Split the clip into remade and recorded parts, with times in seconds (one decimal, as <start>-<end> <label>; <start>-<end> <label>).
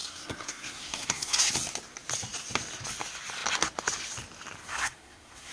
0.0-1.5 remade; 1.5-4.6 recorded; 4.6-5.5 remade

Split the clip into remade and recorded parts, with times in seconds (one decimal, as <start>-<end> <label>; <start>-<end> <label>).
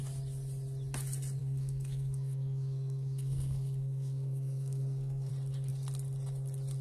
0.0-1.4 recorded; 1.4-5.3 remade; 5.3-6.8 recorded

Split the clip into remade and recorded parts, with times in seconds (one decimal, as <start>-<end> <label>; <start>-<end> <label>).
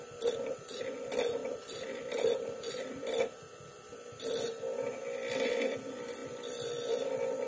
0.0-7.5 recorded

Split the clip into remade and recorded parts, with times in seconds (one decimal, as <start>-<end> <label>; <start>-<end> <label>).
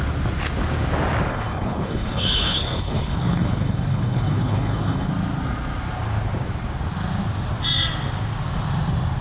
0.0-1.3 recorded; 1.3-5.1 remade; 5.1-9.2 recorded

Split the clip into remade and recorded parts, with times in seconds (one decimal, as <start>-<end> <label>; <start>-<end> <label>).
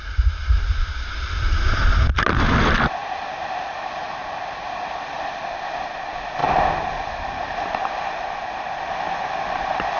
0.0-10.0 recorded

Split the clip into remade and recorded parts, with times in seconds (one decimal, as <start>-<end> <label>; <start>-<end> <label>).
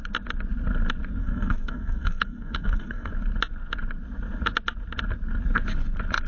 0.0-1.2 recorded; 1.2-3.1 remade; 3.1-6.3 recorded